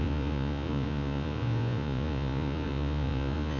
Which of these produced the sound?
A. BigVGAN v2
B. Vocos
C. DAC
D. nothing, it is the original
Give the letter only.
B